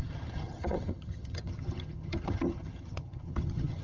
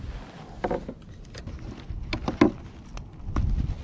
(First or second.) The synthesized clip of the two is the first